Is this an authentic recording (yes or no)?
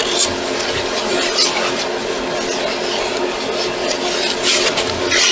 yes